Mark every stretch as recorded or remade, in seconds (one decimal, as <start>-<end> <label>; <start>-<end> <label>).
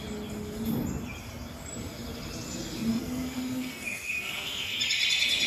0.0-2.9 recorded; 2.9-4.8 remade; 4.8-5.5 recorded